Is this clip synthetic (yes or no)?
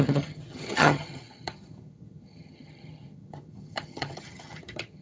yes